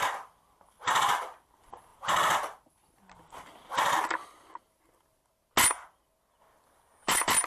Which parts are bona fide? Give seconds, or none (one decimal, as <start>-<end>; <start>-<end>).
5.2-6.4